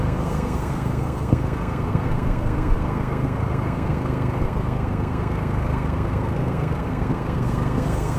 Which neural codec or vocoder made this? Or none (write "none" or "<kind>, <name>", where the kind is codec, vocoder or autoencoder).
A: codec, SNAC